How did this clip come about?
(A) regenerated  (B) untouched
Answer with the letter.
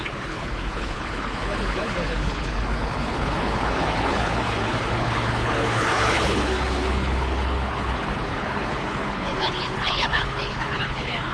A